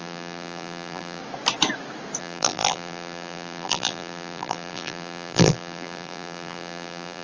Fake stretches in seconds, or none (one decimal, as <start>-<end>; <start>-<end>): 0.0-1.2; 2.2-7.2